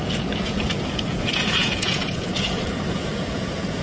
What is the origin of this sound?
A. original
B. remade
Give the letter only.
B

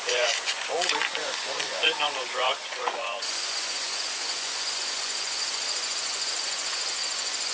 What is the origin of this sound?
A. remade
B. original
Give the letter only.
A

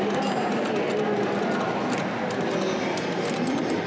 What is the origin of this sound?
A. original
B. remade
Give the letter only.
A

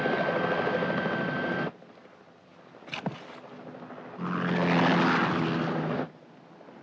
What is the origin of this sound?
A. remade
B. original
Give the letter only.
B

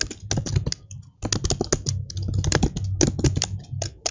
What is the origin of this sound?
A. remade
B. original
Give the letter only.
B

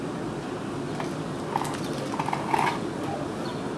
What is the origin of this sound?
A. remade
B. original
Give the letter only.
B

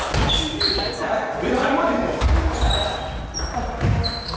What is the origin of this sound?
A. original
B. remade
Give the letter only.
A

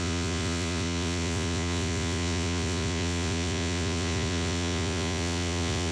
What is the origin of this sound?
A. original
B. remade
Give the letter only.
B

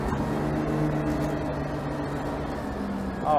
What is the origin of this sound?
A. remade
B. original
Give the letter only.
B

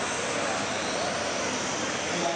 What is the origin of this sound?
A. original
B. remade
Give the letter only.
A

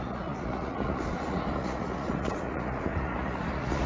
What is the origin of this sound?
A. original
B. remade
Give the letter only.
B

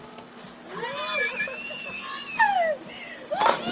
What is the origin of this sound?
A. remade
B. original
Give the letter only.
B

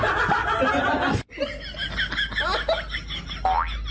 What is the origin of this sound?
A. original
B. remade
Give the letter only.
A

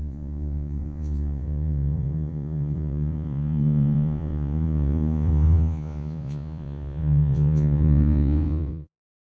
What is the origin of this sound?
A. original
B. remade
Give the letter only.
B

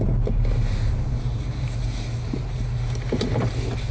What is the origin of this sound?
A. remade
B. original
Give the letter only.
B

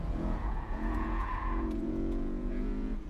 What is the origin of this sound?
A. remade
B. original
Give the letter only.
A